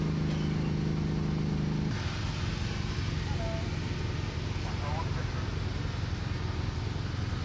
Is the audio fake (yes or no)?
no